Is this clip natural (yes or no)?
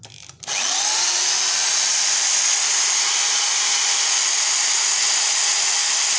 yes